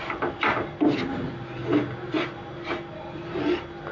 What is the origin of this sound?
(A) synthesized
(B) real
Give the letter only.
B